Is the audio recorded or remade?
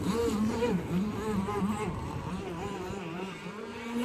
remade